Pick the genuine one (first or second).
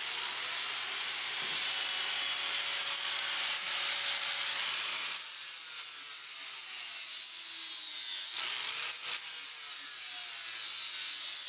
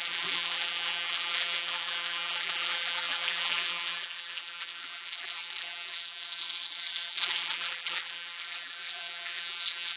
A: first